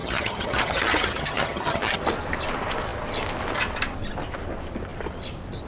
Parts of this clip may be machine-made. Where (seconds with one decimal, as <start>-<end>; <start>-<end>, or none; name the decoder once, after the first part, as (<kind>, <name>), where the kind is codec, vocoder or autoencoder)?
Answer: 0.0-2.0 (vocoder, HiFi-GAN)